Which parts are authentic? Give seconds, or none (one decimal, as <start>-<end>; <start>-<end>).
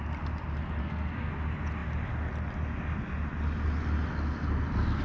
0.0-0.8; 1.3-5.0